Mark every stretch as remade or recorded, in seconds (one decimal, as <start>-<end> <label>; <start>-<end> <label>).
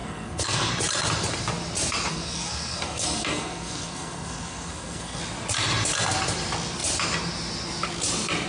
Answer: 0.0-0.7 remade; 0.7-2.1 recorded; 2.1-5.2 remade; 5.2-8.5 recorded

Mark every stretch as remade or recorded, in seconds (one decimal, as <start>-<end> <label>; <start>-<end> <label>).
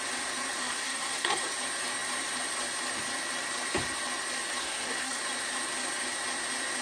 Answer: 0.0-0.6 recorded; 0.6-1.4 remade; 1.4-4.6 recorded; 4.6-5.2 remade; 5.2-6.8 recorded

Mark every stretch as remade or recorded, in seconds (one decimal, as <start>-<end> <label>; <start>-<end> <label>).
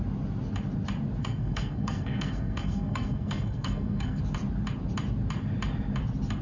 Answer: 0.0-1.2 recorded; 1.2-4.2 remade; 4.2-6.4 recorded